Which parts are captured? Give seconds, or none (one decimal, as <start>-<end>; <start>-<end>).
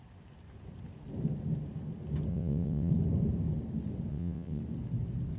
0.0-2.3; 2.9-4.1; 4.6-5.4